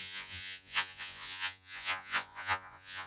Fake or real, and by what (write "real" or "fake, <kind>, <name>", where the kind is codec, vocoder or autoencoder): fake, vocoder, Vocos